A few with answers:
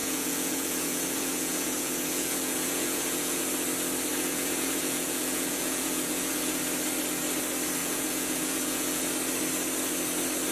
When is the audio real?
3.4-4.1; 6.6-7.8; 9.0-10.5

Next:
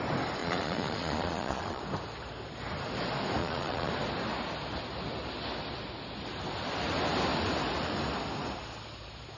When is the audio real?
0.0-0.4; 1.8-3.4; 3.9-9.4

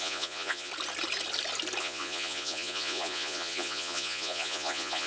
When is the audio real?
0.7-1.8

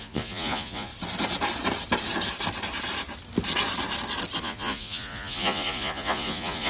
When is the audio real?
0.9-4.4

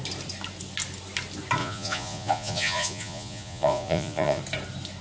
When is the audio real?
0.0-1.6; 4.4-5.0